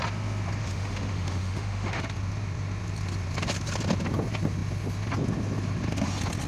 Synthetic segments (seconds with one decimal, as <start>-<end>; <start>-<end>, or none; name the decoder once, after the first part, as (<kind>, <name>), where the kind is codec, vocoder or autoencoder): 0.6-2.0 (autoencoder, DAC-VAE)